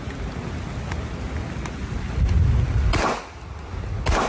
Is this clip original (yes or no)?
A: yes